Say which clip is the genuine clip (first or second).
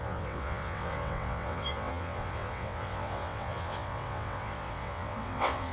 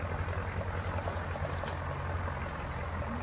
second